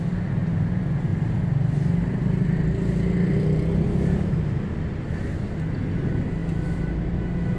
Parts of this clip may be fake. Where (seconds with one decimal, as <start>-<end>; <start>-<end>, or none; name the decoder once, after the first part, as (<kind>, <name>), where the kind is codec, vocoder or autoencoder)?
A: none